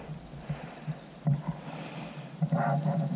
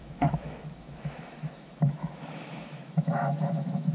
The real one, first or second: first